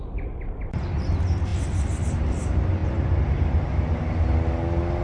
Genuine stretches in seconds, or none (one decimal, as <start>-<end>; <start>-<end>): 0.0-5.0